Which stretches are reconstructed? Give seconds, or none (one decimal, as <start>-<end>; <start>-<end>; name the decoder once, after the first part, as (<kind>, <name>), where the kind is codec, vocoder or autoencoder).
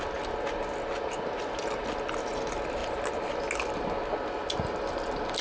none